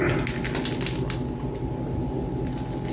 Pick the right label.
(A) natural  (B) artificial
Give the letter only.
A